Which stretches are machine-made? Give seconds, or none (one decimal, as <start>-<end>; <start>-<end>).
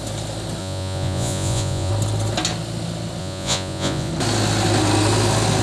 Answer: 0.6-1.9; 3.2-4.1